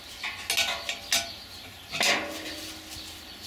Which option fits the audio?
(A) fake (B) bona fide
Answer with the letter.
B